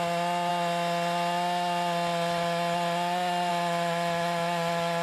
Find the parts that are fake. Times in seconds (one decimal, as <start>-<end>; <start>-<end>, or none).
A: none

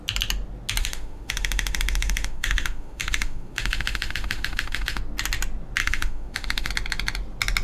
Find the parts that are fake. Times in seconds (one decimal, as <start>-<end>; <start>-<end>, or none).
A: 0.8-5.0; 5.8-6.7

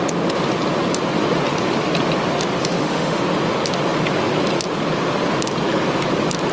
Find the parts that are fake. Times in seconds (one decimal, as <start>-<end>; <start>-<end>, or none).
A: 2.6-3.2

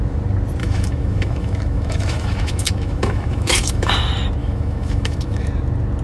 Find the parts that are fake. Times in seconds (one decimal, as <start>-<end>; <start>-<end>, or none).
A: 0.6-3.9; 4.4-5.5